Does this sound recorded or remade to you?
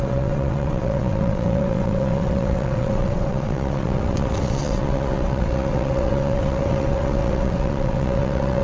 remade